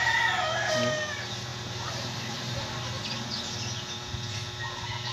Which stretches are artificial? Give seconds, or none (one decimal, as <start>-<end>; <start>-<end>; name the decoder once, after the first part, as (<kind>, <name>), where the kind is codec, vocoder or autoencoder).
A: none

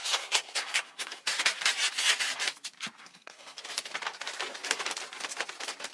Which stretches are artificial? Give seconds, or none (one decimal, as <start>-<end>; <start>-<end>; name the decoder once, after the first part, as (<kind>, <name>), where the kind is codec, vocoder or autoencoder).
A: 0.0-1.2 (codec, SNAC); 3.0-3.6

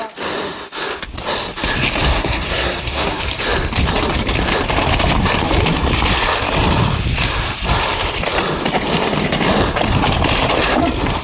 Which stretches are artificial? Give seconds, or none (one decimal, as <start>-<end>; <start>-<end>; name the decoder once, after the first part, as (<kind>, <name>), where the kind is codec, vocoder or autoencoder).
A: 2.1-3.2 (codec, SNAC)

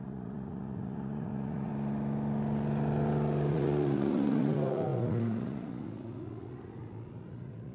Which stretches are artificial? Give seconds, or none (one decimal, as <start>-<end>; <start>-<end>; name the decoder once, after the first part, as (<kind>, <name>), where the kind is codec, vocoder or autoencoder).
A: 0.0-1.7 (vocoder, Vocos); 3.5-7.7

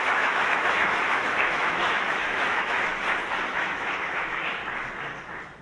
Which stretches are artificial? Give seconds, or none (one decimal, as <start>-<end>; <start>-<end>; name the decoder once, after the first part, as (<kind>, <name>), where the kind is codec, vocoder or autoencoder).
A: 0.0-2.9 (autoencoder, DAC-VAE); 3.5-4.6

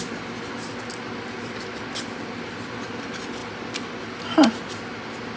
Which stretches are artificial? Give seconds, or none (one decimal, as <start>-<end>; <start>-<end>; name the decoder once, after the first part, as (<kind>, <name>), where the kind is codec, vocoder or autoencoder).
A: none

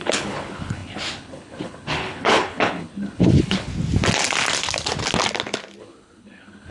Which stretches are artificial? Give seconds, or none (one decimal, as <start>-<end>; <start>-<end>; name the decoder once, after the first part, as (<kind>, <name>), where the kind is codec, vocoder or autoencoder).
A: 0.0-3.7 (codec, HILCodec); 5.8-6.7